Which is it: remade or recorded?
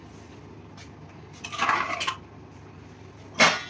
recorded